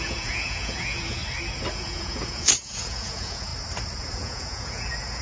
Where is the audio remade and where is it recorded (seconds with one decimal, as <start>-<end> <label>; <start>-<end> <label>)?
0.0-1.2 remade; 1.2-1.7 recorded; 1.7-3.5 remade; 3.5-4.0 recorded; 4.0-5.2 remade